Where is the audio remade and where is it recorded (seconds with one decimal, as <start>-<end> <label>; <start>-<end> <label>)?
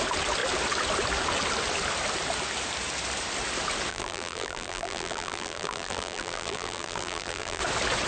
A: 0.0-3.9 recorded; 3.9-7.6 remade; 7.6-8.1 recorded